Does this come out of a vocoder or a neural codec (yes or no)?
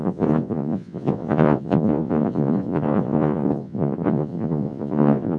yes